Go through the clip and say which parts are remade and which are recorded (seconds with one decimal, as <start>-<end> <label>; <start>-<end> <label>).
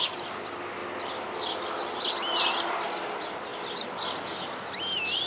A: 0.0-5.3 recorded